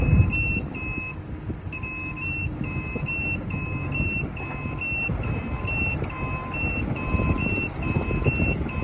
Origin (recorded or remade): recorded